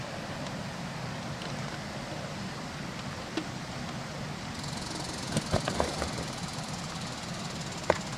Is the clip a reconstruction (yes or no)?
no